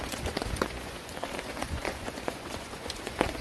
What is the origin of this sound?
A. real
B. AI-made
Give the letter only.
B